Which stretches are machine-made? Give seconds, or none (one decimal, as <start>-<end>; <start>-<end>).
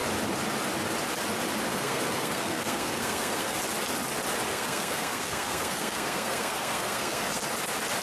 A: 1.7-3.6; 4.5-7.4